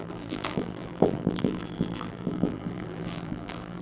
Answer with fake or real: fake